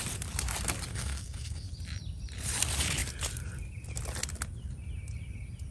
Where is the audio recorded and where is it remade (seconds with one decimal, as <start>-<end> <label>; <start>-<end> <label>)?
0.0-0.9 recorded; 0.9-1.7 remade; 1.7-5.7 recorded